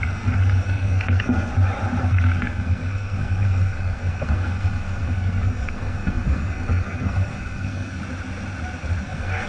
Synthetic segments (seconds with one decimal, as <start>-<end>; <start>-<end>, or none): 0.0-1.5; 2.0-8.0; 9.0-9.5